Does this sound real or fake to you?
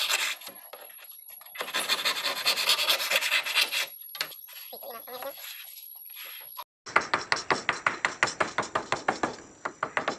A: real